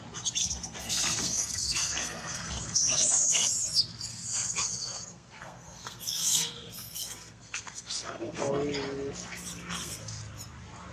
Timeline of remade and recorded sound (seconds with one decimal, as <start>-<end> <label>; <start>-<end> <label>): 0.0-0.4 recorded; 0.4-3.5 remade; 3.5-4.1 recorded; 4.1-8.5 remade; 8.5-9.6 recorded; 9.6-10.2 remade; 10.2-10.9 recorded